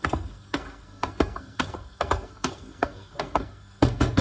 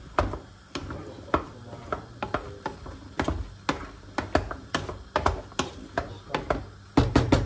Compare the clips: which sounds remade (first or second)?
first